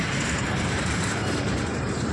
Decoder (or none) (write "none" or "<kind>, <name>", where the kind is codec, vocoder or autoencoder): vocoder, BigVGAN v2